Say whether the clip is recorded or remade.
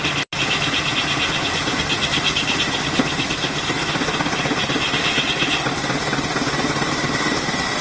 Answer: recorded